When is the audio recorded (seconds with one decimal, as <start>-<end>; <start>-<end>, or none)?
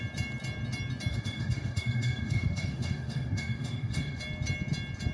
0.0-1.1; 4.2-5.1